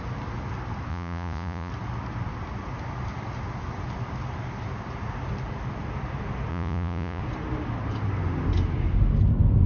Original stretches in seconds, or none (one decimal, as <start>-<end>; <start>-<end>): 0.0-0.9; 1.7-6.5; 7.2-9.7